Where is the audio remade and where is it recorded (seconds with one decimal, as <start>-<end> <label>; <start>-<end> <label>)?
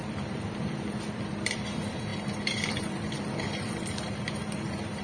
0.0-5.0 remade